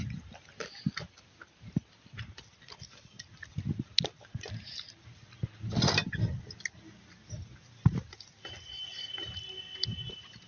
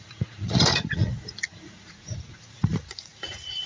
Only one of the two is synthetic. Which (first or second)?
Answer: second